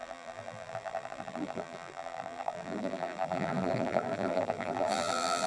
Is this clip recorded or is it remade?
remade